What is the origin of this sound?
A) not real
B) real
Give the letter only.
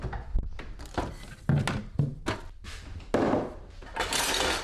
B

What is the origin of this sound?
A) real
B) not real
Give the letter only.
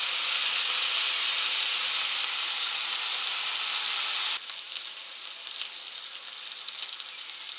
A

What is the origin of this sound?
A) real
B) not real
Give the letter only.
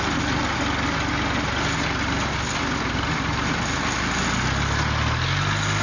A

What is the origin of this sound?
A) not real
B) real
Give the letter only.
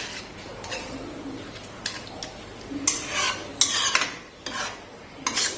B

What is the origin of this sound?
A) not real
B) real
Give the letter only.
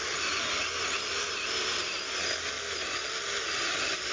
B